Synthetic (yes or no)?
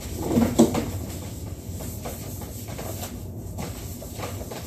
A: yes